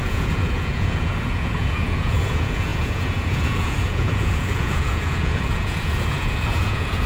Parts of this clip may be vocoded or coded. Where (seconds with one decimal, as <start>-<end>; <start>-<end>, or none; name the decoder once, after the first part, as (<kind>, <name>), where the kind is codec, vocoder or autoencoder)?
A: 0.0-7.1 (vocoder, Vocos)